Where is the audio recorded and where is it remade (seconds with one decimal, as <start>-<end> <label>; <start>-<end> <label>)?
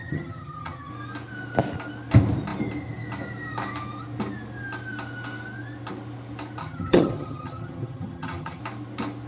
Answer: 0.0-0.9 remade; 0.9-6.6 recorded; 6.6-8.6 remade; 8.6-9.3 recorded